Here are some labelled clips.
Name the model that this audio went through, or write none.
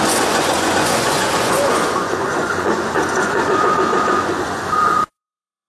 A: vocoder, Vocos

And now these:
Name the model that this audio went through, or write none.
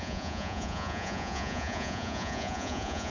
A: vocoder, Vocos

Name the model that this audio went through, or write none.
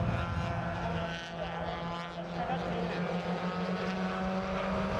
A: none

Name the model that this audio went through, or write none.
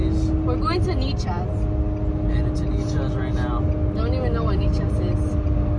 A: none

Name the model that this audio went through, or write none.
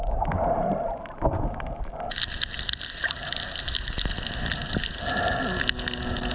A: none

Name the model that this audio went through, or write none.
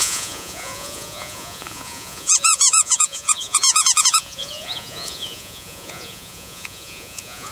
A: vocoder, Vocos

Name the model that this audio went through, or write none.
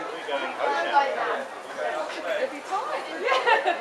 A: none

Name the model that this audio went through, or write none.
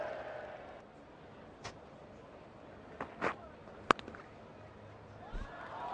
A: none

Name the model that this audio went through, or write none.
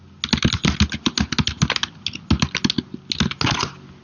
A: none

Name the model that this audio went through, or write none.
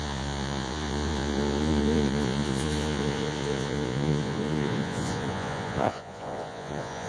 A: vocoder, Vocos